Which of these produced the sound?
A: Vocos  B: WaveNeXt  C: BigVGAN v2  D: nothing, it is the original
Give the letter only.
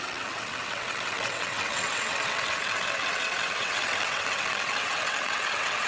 B